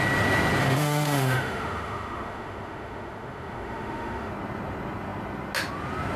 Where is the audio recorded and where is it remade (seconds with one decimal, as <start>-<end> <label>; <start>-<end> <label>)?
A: 0.0-0.6 recorded; 0.6-4.3 remade; 4.3-6.2 recorded